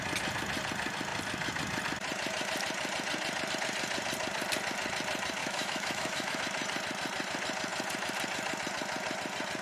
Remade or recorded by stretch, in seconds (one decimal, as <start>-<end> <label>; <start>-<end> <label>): 0.0-5.4 recorded; 5.4-6.4 remade; 6.4-9.6 recorded